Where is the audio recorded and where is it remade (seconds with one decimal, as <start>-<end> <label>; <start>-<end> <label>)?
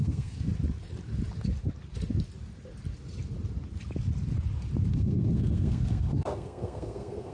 0.0-0.5 remade; 0.5-4.9 recorded; 4.9-7.3 remade